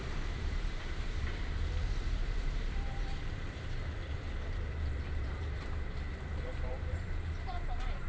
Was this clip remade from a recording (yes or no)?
yes